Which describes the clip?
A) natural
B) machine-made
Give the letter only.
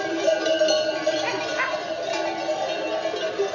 A